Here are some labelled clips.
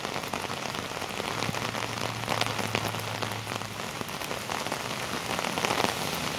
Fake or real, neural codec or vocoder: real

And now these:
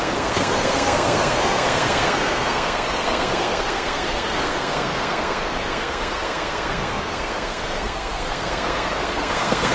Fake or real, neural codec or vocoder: fake, codec, SNAC